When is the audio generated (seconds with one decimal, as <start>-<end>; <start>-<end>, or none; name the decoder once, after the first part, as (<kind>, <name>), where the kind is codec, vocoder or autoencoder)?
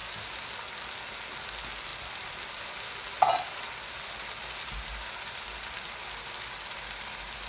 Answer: none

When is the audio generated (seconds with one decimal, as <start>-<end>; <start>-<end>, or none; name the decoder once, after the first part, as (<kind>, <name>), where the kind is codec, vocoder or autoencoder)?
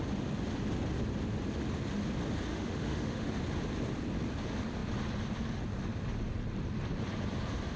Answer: 2.5-3.3 (autoencoder, DAC-VAE)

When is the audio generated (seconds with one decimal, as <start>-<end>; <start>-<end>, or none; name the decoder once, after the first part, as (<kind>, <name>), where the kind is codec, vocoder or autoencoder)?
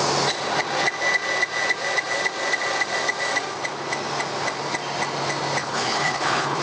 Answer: 5.6-6.6 (codec, HILCodec)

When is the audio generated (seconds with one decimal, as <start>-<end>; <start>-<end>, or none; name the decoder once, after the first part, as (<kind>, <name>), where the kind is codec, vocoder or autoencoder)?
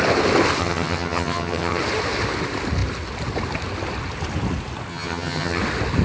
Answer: 0.6-1.8 (vocoder, HiFi-GAN); 4.9-5.6